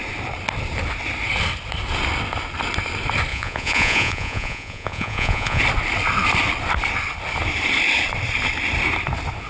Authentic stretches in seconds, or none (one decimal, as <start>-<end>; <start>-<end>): 0.0-3.3; 5.6-9.5